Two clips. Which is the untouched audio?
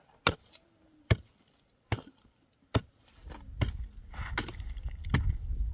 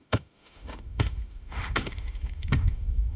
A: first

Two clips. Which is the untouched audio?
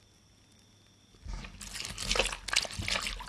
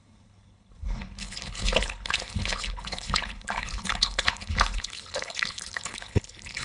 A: first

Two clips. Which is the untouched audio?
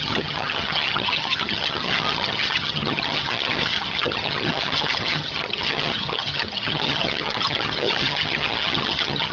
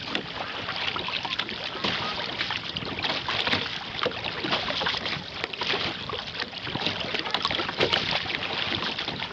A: second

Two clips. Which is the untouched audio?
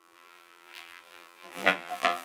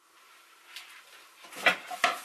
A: second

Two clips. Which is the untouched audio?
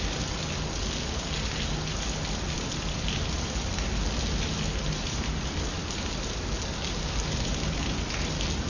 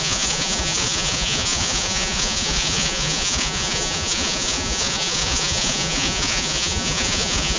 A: first